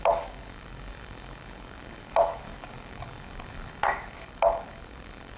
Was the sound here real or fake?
fake